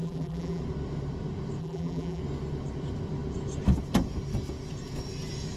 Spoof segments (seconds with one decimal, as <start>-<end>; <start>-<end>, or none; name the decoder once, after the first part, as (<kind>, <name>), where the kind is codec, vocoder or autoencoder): 0.0-0.6 (vocoder, BigVGAN v2); 1.6-2.2